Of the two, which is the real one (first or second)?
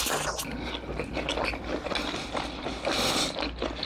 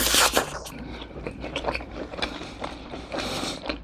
first